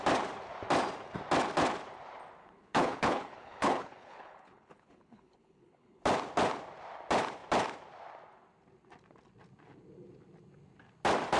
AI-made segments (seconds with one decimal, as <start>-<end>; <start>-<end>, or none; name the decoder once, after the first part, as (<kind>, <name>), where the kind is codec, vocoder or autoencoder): 2.4-6.0 (codec, HILCodec)